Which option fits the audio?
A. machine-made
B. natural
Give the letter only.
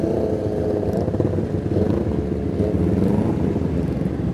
B